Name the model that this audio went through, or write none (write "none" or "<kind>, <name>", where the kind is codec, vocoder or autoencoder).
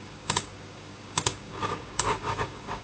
codec, DAC